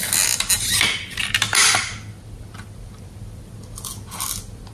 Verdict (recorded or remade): recorded